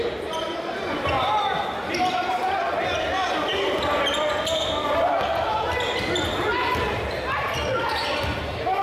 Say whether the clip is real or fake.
real